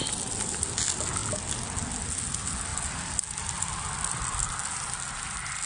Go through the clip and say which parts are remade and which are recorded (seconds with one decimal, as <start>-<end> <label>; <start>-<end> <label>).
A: 0.0-5.7 recorded

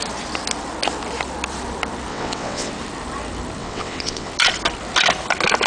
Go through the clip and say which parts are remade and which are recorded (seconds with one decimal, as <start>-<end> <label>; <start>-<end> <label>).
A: 0.0-2.1 recorded; 2.1-2.7 remade; 2.7-3.6 recorded; 3.6-4.3 remade; 4.3-5.7 recorded

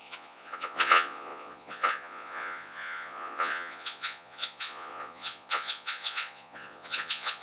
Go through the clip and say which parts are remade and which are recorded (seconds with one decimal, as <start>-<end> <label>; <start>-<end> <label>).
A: 0.0-7.4 remade

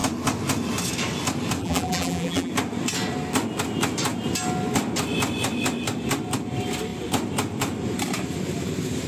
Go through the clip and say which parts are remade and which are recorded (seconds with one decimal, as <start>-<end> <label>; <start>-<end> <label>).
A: 0.0-1.6 recorded; 1.6-2.5 remade; 2.5-9.1 recorded

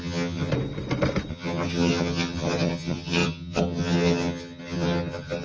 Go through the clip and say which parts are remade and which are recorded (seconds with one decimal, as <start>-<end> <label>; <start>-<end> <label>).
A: 0.0-0.5 remade; 0.5-1.3 recorded; 1.3-5.4 remade

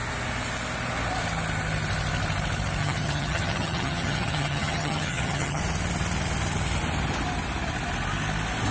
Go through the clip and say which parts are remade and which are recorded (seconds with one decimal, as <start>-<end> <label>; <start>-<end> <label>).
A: 0.0-2.8 recorded; 2.8-5.6 remade; 5.6-8.7 recorded